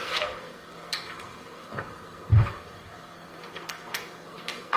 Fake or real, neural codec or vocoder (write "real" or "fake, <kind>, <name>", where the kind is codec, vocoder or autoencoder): fake, codec, SNAC